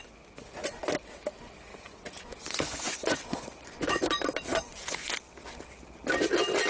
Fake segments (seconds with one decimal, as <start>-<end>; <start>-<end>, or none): 0.0-0.8; 1.7-4.0; 4.5-5.1